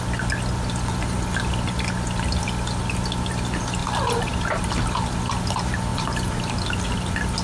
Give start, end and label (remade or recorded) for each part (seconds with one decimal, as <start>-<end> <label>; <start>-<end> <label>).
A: 0.0-3.8 recorded; 3.8-4.3 remade; 4.3-5.9 recorded; 5.9-6.5 remade; 6.5-7.4 recorded